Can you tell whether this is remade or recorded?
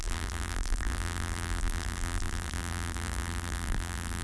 remade